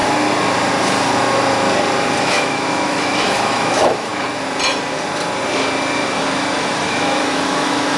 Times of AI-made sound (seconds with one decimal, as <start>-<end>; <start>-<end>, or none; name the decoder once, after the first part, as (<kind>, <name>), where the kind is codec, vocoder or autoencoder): 2.2-4.1 (autoencoder, DAC-VAE); 6.8-8.0